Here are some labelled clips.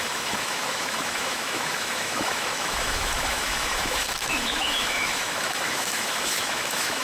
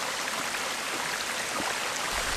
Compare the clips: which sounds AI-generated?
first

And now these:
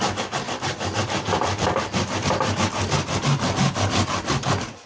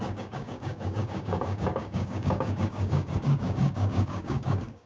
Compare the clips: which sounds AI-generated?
second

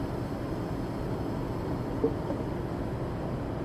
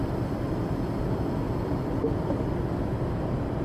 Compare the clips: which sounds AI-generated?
second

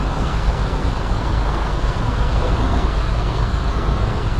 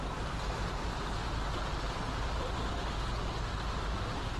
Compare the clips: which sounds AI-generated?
first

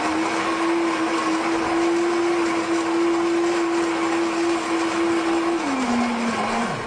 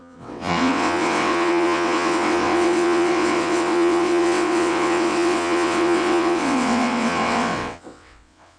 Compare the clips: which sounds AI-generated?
second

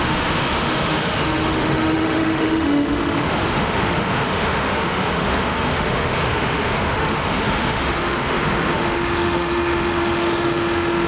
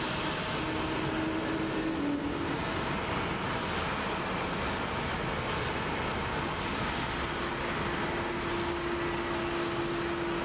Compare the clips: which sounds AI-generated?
first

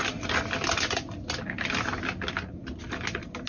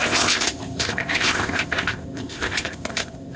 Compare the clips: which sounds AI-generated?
second